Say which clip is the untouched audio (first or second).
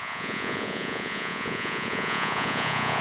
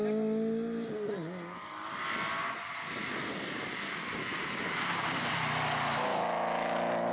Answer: second